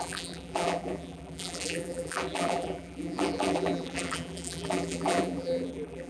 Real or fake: fake